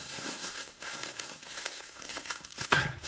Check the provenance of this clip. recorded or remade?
remade